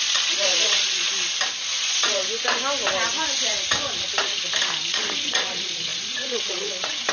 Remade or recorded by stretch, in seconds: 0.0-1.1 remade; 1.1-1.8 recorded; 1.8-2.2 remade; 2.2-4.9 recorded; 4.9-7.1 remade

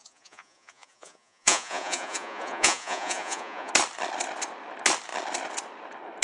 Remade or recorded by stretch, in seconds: 0.0-3.7 remade; 3.7-6.2 recorded

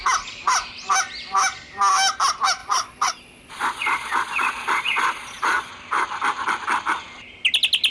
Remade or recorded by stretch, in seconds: 0.0-2.6 recorded; 2.6-5.7 remade; 5.7-7.9 recorded

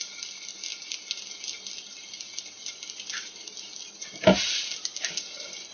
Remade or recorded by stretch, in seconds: 0.0-5.7 recorded

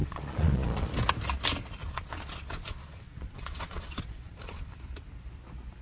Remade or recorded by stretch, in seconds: 0.0-0.9 remade; 0.9-1.8 recorded; 1.8-4.7 remade; 4.7-5.8 recorded

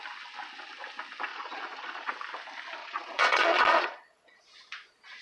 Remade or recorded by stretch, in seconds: 0.0-1.3 recorded; 1.3-2.1 remade; 2.1-2.8 recorded; 2.8-4.4 remade; 4.4-5.2 recorded